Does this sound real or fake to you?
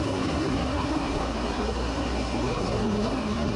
fake